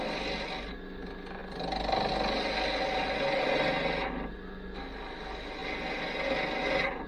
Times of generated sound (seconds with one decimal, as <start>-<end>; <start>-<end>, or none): none